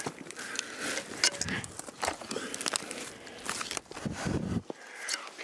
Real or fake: real